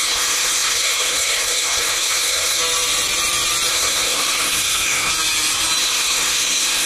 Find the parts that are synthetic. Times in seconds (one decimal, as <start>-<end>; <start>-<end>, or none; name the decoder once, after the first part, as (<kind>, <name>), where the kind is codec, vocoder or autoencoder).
0.0-2.6 (codec, SNAC); 3.7-5.1; 5.8-6.8